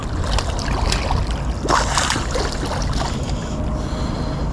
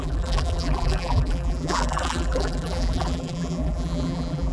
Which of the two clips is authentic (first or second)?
first